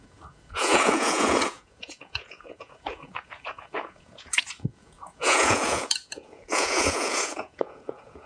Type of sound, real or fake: fake